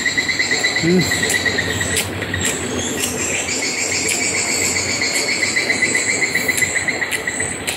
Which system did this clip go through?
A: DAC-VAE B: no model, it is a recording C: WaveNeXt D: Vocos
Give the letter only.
B